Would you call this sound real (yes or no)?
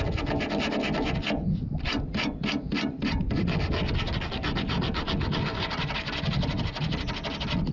yes